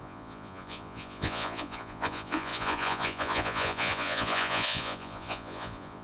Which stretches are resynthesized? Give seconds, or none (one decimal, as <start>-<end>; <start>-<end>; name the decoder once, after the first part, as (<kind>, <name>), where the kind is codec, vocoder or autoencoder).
0.0-6.0 (vocoder, Vocos)